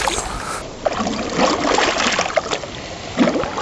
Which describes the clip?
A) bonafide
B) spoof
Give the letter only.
A